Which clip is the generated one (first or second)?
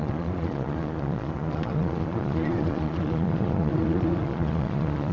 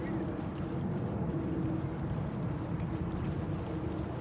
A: first